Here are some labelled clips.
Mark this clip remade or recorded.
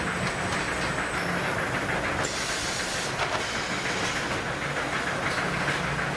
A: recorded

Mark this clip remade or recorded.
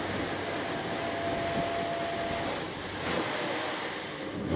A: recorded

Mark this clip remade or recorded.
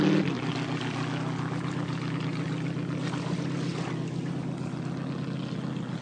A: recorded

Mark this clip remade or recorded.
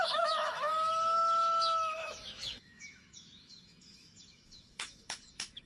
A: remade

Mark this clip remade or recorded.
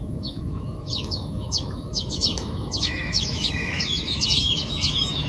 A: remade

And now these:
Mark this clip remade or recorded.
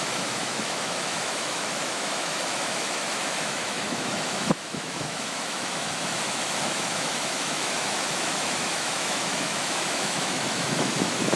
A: remade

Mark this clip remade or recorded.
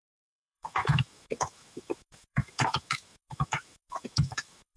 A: remade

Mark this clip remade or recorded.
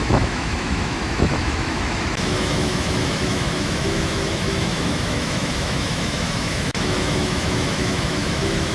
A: remade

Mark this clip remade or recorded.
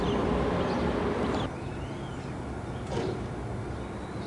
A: recorded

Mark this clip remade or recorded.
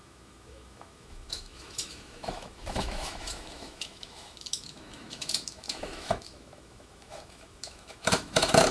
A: remade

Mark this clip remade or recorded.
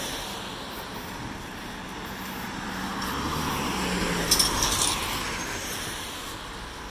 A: recorded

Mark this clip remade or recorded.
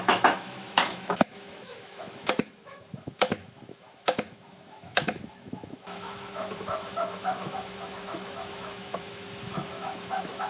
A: remade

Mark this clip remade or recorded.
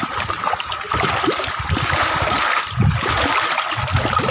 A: recorded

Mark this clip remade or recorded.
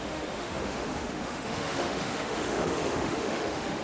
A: remade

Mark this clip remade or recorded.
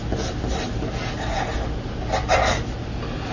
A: recorded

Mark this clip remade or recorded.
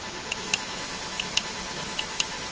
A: remade